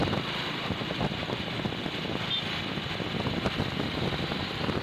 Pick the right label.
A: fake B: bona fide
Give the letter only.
B